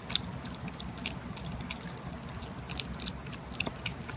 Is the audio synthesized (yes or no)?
no